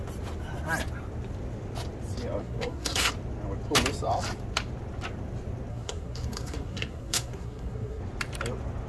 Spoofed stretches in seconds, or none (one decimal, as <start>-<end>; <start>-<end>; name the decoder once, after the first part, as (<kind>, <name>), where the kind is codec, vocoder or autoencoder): 2.4-3.1 (codec, SNAC); 5.7-8.0